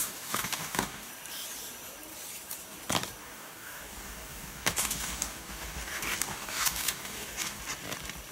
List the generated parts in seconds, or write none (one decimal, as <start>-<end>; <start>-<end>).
0.0-1.1; 3.2-7.6

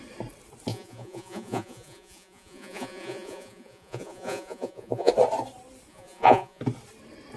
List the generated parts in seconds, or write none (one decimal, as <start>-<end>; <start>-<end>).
0.7-5.1; 5.9-6.6

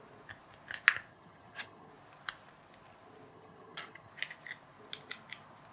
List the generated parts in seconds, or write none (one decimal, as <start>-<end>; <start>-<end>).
1.1-1.9; 3.3-4.1

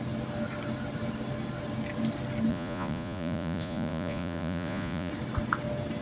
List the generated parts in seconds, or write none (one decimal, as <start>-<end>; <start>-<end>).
2.5-5.1

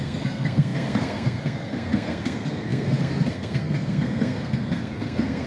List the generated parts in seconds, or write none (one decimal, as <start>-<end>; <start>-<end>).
0.0-5.5

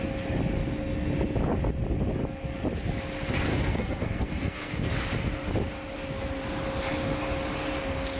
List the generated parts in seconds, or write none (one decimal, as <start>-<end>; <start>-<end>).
3.5-4.9

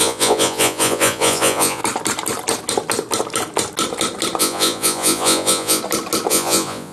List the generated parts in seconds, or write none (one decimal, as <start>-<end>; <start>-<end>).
0.0-1.8; 4.4-5.8; 6.3-6.9